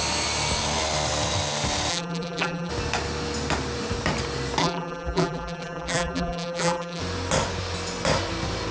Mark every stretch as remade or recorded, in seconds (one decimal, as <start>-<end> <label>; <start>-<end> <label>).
0.0-1.9 recorded; 1.9-2.7 remade; 2.7-4.6 recorded; 4.6-7.0 remade; 7.0-8.7 recorded